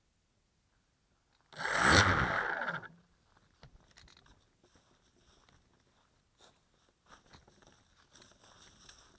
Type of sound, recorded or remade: recorded